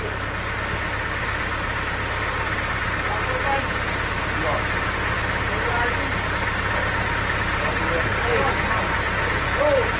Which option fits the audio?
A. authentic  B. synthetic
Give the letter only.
A